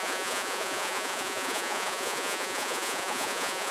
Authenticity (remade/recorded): remade